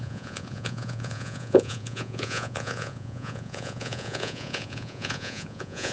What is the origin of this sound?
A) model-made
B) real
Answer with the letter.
A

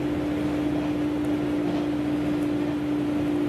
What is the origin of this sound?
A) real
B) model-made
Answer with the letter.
A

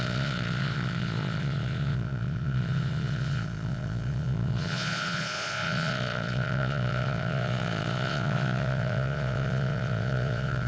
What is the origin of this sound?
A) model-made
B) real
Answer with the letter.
A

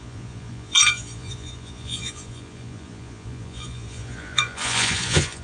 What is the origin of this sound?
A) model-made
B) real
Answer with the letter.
A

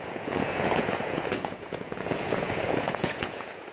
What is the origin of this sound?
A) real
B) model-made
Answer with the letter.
B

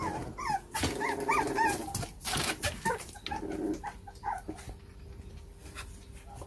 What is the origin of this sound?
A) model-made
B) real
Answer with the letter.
B